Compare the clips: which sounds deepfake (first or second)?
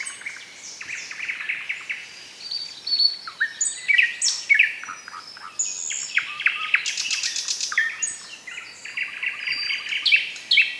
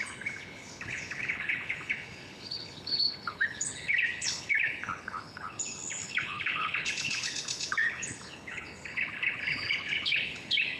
second